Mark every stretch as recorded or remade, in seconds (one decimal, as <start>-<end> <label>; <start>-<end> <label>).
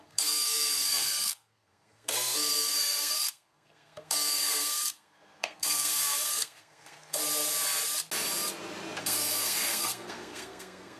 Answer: 0.0-7.2 remade; 7.2-9.0 recorded; 9.0-11.0 remade